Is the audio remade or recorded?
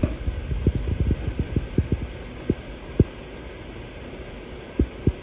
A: recorded